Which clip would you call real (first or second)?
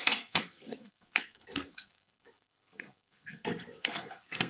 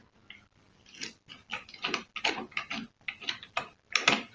second